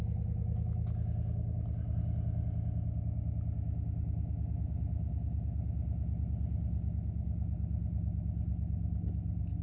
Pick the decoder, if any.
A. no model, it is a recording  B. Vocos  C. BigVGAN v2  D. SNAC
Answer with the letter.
A